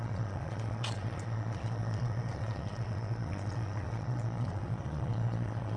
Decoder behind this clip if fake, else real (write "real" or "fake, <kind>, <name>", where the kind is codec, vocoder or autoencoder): fake, vocoder, Vocos